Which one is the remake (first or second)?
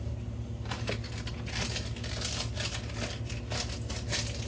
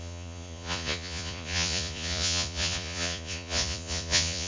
second